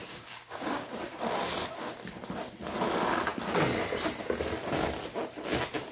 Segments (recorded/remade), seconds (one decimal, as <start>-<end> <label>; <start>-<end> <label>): 0.0-0.9 remade; 0.9-5.9 recorded

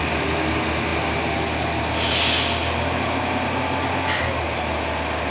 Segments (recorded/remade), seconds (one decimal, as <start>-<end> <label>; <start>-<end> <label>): 0.0-5.3 recorded

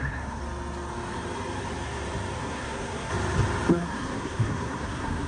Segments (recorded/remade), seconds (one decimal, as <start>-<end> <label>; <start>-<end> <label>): 0.0-0.4 remade; 0.4-2.4 recorded; 2.4-3.1 remade; 3.1-3.7 recorded; 3.7-5.3 remade

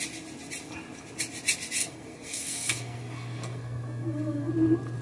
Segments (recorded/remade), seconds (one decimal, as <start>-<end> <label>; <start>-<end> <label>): 0.0-1.8 recorded; 1.8-4.5 remade; 4.5-5.0 recorded

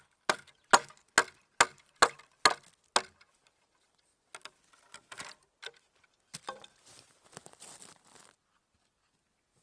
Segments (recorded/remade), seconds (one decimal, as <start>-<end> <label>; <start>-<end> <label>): 0.0-9.6 recorded

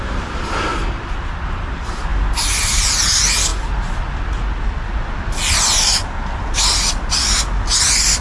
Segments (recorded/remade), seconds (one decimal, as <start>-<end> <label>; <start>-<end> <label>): 0.0-8.2 recorded

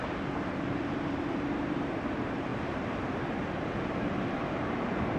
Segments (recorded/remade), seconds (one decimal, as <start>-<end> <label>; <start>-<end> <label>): 0.0-2.5 remade; 2.5-4.4 recorded; 4.4-5.2 remade

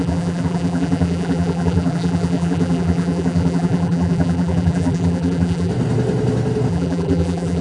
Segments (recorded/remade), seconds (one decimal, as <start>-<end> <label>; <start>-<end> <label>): 0.0-5.7 remade; 5.7-6.7 recorded; 6.7-7.6 remade